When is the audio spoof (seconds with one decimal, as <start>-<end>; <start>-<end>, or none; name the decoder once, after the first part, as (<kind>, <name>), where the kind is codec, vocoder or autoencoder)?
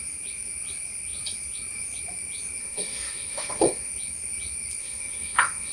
2.6-3.9 (autoencoder, DAC-VAE); 4.8-5.7